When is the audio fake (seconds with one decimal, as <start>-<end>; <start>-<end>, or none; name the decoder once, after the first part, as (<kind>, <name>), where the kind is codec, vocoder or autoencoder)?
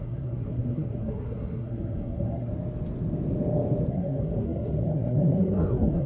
0.0-2.5 (codec, SNAC); 3.9-6.1